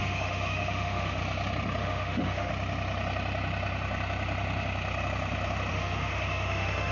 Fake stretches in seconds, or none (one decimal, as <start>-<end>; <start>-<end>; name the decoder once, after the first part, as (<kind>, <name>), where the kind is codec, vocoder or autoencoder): 0.0-1.2 (autoencoder, DAC-VAE); 1.8-2.5; 5.7-6.9